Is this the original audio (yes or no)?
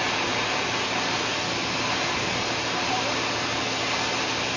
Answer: yes